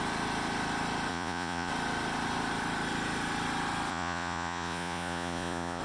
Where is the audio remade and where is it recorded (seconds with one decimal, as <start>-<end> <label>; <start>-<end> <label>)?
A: 0.0-1.1 recorded; 1.1-1.7 remade; 1.7-3.9 recorded; 3.9-5.8 remade